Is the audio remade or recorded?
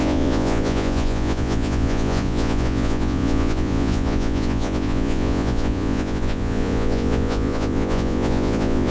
remade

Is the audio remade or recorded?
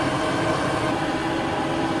recorded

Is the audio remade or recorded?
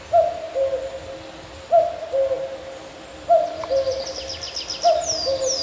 recorded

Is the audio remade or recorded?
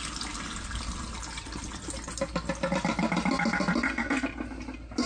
recorded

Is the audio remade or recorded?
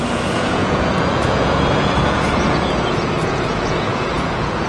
remade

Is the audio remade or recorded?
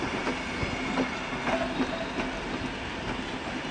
recorded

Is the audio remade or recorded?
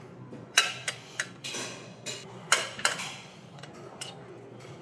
remade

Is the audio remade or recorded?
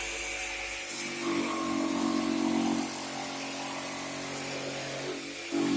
recorded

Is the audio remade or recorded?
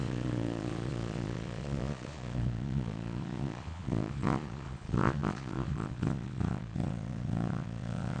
remade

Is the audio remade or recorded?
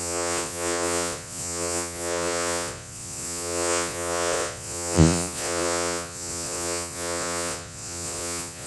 remade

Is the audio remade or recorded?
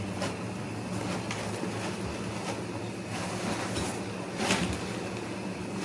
recorded